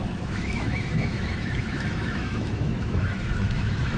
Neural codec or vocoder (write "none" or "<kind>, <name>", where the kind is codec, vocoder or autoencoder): autoencoder, DAC-VAE